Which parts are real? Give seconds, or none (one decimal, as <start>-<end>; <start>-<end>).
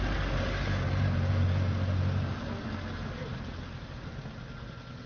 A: 0.0-5.1